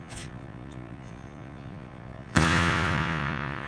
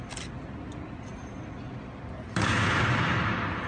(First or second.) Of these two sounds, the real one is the second